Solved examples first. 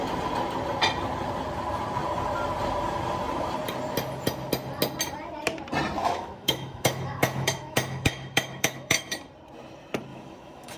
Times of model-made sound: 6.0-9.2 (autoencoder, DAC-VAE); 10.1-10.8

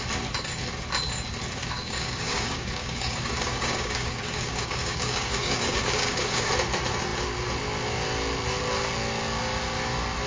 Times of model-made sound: 1.6-6.5 (codec, DAC)